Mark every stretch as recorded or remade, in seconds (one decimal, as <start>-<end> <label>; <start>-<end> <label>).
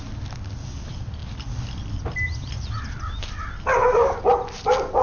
0.0-5.0 recorded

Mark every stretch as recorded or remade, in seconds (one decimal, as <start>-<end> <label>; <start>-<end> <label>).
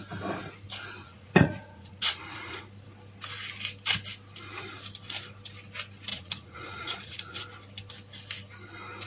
0.0-1.0 recorded; 1.0-2.6 remade; 2.6-6.1 recorded; 6.1-7.4 remade; 7.4-9.1 recorded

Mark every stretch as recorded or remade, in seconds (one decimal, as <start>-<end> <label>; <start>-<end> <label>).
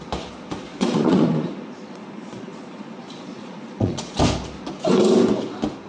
0.0-0.7 recorded; 0.7-4.2 remade; 4.2-5.9 recorded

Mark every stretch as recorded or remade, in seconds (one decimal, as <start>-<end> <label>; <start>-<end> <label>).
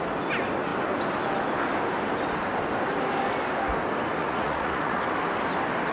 0.0-4.2 recorded; 4.2-5.0 remade; 5.0-5.9 recorded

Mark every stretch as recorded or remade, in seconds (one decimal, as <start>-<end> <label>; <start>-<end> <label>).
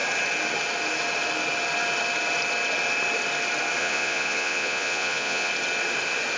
0.0-3.8 recorded; 3.8-5.5 remade; 5.5-6.4 recorded